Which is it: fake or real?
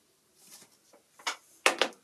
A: real